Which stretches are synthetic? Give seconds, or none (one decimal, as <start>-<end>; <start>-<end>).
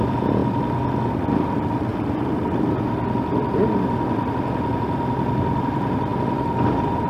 none